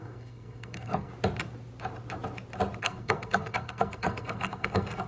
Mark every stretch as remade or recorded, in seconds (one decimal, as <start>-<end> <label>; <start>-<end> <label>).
0.0-1.1 remade; 1.1-2.8 recorded; 2.8-5.1 remade